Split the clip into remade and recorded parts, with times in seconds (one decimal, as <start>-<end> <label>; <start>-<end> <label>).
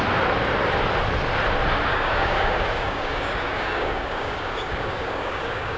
0.0-1.9 recorded; 1.9-5.8 remade